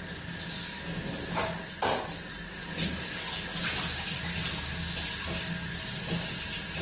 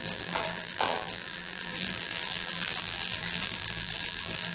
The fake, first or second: second